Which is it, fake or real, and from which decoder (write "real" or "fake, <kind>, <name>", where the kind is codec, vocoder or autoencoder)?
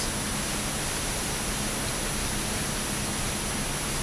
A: real